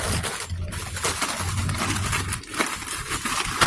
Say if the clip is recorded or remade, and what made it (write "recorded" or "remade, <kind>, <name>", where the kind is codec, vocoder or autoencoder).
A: recorded